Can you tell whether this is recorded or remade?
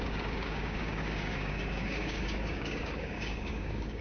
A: remade